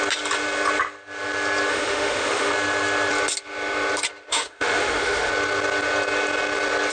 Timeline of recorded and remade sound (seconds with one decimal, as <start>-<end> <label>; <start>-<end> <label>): 0.0-1.7 recorded; 1.7-2.5 remade; 2.5-4.3 recorded; 4.3-5.3 remade; 5.3-6.9 recorded